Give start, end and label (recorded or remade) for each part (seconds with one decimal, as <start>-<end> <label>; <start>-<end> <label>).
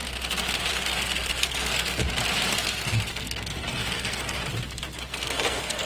0.0-0.7 recorded; 0.7-2.0 remade; 2.0-2.5 recorded; 2.5-4.4 remade; 4.4-5.0 recorded; 5.0-5.9 remade